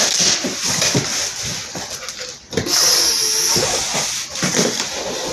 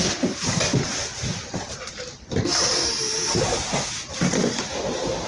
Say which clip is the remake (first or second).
second